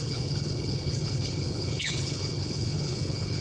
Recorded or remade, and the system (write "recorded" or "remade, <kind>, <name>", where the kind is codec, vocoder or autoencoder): remade, codec, HILCodec